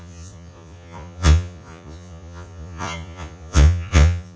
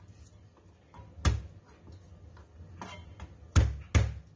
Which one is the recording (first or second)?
second